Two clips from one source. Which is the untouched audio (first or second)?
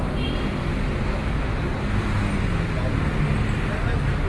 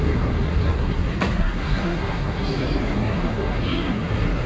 first